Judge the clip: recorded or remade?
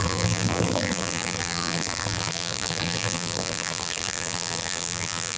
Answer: remade